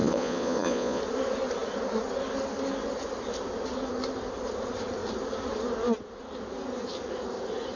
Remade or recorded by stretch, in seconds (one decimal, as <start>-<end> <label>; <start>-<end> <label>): 0.0-1.0 remade; 1.0-7.8 recorded

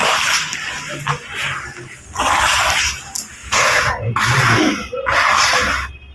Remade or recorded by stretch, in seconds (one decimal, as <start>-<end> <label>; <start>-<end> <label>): 0.0-3.4 recorded; 3.4-4.1 remade; 4.1-6.1 recorded

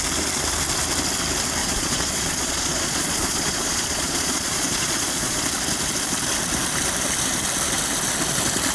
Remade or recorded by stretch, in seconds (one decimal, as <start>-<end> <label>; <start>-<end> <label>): 0.0-1.6 recorded; 1.6-5.4 remade; 5.4-8.7 recorded

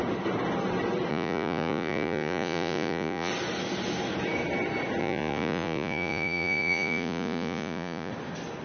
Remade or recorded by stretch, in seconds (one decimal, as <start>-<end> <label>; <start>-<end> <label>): 0.0-1.1 recorded; 1.1-3.3 remade; 3.3-5.0 recorded; 5.0-8.1 remade; 8.1-8.6 recorded